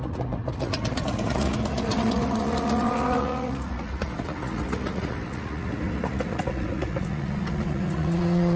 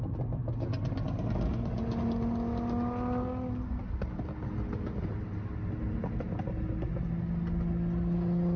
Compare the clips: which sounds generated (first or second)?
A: first